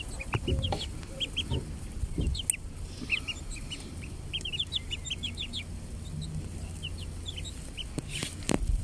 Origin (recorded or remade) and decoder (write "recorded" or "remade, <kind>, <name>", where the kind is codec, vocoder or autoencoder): recorded